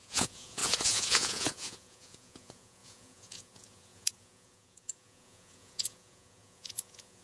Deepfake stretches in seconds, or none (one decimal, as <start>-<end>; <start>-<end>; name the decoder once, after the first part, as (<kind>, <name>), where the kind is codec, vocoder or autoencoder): 0.0-7.2 (vocoder, Vocos)